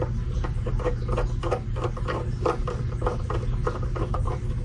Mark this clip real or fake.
real